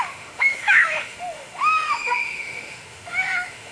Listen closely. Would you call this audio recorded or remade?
remade